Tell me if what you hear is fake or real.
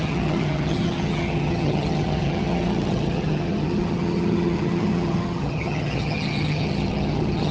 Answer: fake